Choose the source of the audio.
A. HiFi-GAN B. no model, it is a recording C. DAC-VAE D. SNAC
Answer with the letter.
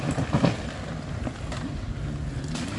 B